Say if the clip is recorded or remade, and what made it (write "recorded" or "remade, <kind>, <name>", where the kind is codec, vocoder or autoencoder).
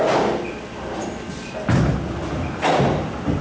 recorded